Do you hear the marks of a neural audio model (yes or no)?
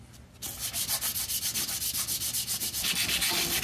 no